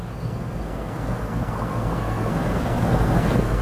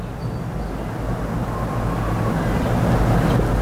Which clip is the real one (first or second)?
second